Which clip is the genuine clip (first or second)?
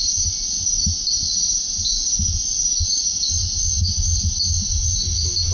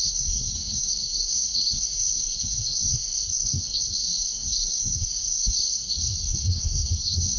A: first